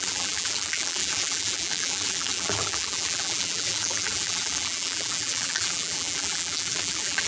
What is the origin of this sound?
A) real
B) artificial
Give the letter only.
B